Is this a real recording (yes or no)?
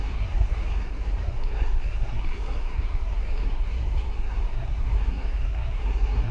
no